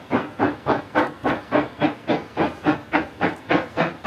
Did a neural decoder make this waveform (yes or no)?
yes